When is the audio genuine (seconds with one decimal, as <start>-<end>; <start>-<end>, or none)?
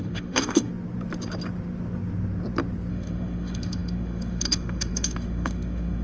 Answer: 0.7-2.9